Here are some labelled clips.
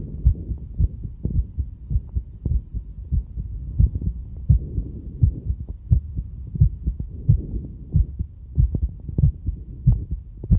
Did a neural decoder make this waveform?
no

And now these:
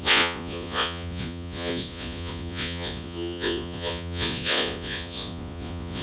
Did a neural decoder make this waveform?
yes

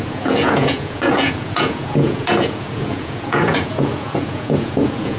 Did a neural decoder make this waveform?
yes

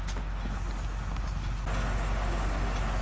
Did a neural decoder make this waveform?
no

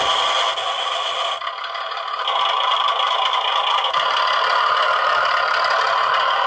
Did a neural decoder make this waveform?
no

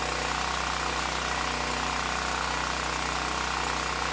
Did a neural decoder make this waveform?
no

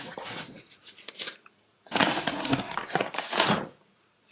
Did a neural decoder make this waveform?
yes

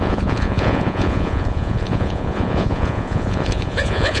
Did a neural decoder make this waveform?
yes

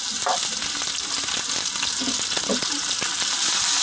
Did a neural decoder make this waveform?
no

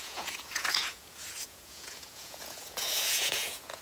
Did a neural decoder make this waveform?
yes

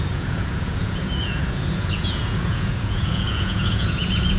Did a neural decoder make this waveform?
yes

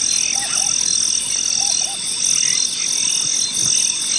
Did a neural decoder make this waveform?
no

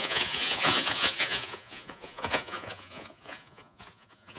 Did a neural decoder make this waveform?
yes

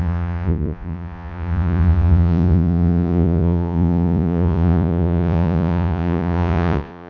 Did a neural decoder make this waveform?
yes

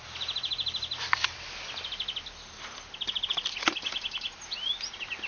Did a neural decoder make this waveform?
no